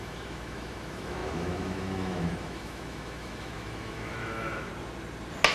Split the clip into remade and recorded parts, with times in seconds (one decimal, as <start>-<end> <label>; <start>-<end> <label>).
0.0-4.7 remade; 4.7-5.5 recorded